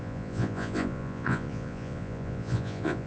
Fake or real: fake